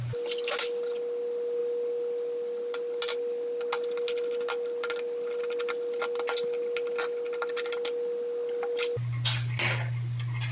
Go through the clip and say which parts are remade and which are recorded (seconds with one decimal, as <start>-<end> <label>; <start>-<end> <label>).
0.0-10.5 recorded